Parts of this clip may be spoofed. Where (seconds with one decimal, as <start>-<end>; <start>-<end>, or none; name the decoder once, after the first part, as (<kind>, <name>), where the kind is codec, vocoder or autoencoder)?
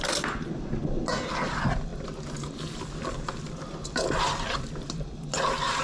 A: none